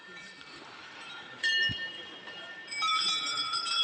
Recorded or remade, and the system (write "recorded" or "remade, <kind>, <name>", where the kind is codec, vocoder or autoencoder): remade, vocoder, BigVGAN v2